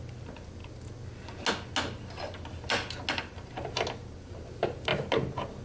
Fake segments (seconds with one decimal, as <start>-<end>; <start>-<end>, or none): none